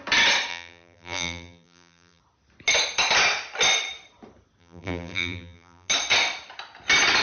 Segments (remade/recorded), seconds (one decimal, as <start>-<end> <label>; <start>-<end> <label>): 0.0-0.5 recorded; 0.5-2.2 remade; 2.2-4.6 recorded; 4.6-5.9 remade; 5.9-7.2 recorded

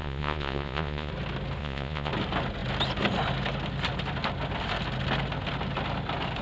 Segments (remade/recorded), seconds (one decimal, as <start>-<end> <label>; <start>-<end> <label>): 0.0-1.1 remade; 1.1-1.6 recorded; 1.6-2.1 remade; 2.1-6.4 recorded

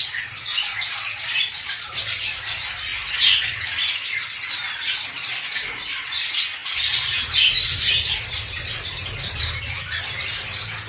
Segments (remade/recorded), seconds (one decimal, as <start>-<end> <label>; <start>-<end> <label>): 0.0-6.6 recorded; 6.6-10.0 remade; 10.0-10.9 recorded

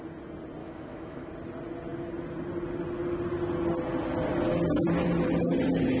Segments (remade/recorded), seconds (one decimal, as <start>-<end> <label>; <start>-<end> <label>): 0.0-0.6 recorded; 0.6-1.3 remade; 1.3-6.0 recorded

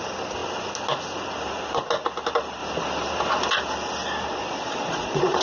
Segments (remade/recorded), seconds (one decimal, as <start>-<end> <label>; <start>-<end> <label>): 0.0-4.3 recorded; 4.3-5.4 remade